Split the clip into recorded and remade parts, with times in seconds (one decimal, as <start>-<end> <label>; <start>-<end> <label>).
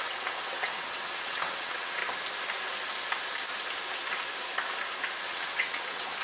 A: 0.0-2.0 remade; 2.0-5.2 recorded; 5.2-6.2 remade